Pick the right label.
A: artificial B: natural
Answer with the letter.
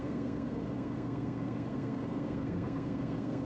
A